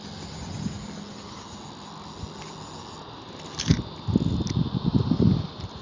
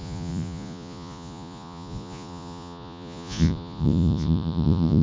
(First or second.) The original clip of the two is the first